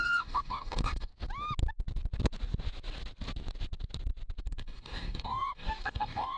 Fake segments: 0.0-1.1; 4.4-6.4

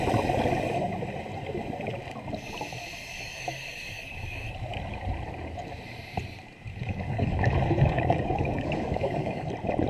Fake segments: 3.0-4.5; 6.7-9.5